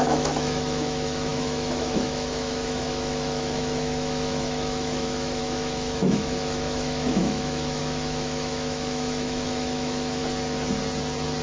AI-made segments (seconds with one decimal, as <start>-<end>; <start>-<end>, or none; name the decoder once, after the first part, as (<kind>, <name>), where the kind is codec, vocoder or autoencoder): 0.0-10.2 (autoencoder, DAC-VAE)